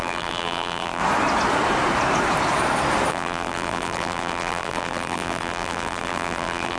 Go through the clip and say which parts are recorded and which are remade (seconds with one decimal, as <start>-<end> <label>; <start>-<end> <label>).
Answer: 0.0-1.0 remade; 1.0-3.1 recorded; 3.1-6.8 remade